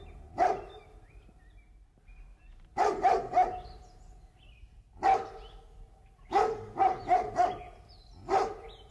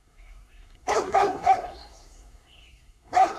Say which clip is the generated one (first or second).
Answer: second